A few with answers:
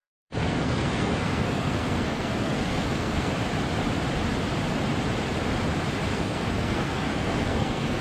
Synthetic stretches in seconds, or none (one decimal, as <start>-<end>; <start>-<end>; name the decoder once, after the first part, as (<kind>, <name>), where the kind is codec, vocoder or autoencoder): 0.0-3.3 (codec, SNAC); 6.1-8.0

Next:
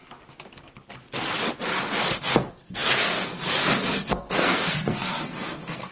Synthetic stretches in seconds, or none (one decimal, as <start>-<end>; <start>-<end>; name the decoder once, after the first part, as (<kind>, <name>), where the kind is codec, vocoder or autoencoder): 2.2-5.9 (codec, SNAC)

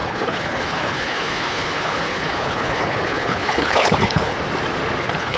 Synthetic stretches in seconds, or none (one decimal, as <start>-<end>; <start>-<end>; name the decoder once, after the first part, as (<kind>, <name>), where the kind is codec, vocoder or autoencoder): 0.0-4.3 (codec, HILCodec); 5.0-5.4

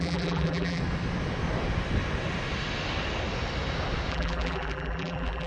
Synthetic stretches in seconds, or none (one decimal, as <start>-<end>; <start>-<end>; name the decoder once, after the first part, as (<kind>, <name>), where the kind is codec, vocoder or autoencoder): 0.0-0.8 (vocoder, BigVGAN v2); 4.1-5.5